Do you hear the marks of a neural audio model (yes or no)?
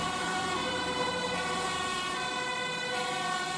yes